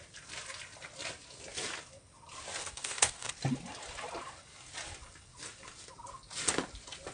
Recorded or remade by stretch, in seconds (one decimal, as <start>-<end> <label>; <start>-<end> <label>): 0.0-2.6 recorded; 2.6-3.3 remade; 3.3-7.1 recorded